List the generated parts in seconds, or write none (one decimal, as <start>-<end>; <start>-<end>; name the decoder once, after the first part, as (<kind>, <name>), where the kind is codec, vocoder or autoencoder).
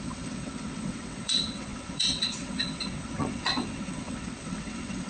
0.0-5.1 (vocoder, WaveNeXt)